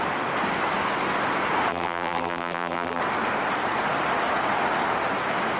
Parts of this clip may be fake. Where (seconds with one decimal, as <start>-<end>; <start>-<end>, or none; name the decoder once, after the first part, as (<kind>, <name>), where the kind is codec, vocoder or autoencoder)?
1.7-3.0 (vocoder, BigVGAN v2)